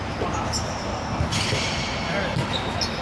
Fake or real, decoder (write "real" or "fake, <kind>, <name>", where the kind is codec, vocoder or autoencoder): real